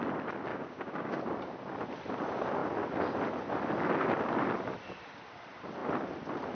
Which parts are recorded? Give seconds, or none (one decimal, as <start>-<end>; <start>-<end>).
0.0-0.5; 1.2-6.5